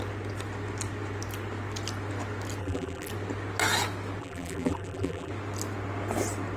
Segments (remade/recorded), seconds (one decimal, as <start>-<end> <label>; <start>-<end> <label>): 0.0-2.6 recorded; 2.6-3.1 remade; 3.1-4.2 recorded; 4.2-5.3 remade; 5.3-6.6 recorded

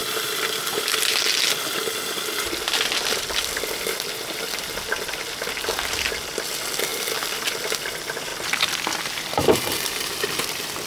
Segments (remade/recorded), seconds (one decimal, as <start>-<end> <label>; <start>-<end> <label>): 0.0-8.3 remade; 8.3-9.0 recorded; 9.0-10.9 remade

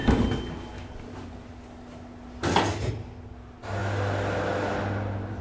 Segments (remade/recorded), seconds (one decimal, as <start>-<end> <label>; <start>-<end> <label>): 0.0-5.4 recorded

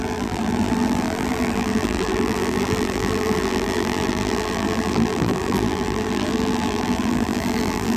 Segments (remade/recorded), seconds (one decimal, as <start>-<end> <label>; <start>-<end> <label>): 0.0-8.0 remade

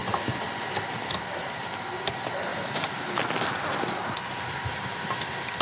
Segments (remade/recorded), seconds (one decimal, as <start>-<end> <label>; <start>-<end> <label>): 0.0-2.5 recorded; 2.5-4.9 remade; 4.9-5.6 recorded